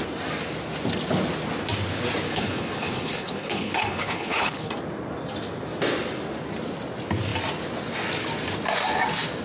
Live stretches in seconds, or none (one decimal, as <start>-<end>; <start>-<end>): 0.0-2.3; 4.7-9.4